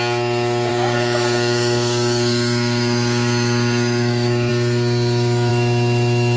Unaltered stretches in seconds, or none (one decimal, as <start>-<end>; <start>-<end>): 0.0-0.7; 4.5-6.4